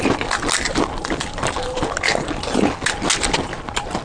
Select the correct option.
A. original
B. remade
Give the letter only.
A